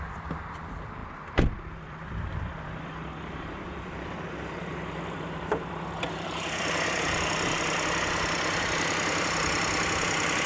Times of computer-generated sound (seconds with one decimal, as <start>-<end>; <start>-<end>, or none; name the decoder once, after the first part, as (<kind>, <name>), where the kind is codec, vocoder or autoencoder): 0.0-10.5 (vocoder, BigVGAN v2)